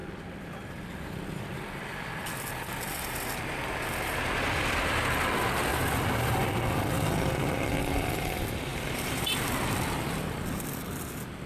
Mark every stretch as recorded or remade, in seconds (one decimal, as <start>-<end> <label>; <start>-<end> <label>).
0.0-8.7 recorded; 8.7-9.3 remade; 9.3-11.5 recorded

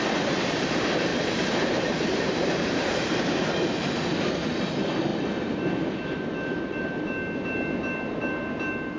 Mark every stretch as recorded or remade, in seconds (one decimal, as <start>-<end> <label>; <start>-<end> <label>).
0.0-1.1 recorded; 1.1-3.8 remade; 3.8-9.0 recorded